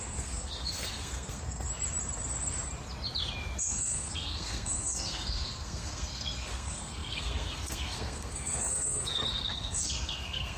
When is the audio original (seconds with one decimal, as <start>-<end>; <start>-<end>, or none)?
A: 1.7-3.6